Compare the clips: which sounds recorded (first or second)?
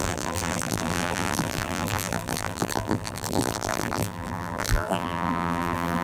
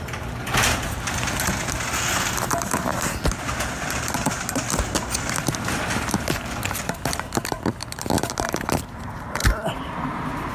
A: second